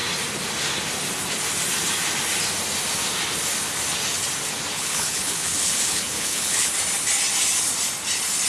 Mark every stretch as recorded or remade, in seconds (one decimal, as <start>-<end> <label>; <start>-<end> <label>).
0.0-4.7 recorded; 4.7-6.7 remade; 6.7-8.5 recorded